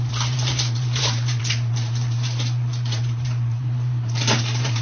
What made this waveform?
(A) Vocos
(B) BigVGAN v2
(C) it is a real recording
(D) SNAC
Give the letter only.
B